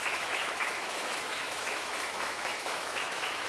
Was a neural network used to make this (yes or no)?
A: yes